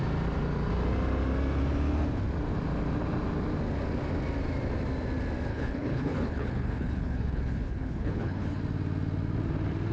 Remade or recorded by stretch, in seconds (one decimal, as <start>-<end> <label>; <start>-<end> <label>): 0.0-5.5 recorded; 5.5-8.6 remade; 8.6-9.9 recorded